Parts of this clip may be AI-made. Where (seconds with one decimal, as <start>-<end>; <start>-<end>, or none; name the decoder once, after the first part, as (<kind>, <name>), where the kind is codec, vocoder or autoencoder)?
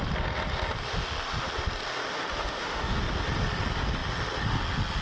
2.1-3.0 (autoencoder, DAC-VAE)